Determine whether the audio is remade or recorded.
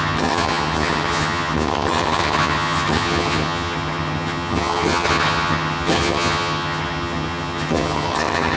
remade